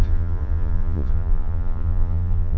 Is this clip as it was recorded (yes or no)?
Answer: no